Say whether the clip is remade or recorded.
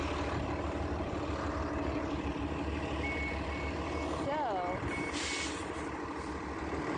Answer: recorded